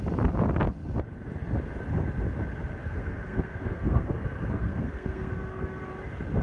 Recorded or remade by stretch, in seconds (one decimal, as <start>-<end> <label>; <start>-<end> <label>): 0.0-2.8 recorded; 2.8-5.9 remade; 5.9-6.4 recorded